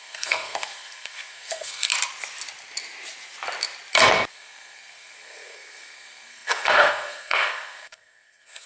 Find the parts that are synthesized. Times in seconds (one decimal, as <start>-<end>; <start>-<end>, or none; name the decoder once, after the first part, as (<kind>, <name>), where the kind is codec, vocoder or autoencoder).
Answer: 0.0-1.9 (codec, SNAC); 4.3-8.7